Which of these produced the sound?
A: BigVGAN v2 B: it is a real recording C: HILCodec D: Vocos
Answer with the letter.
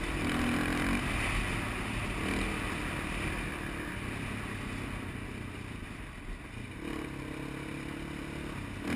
B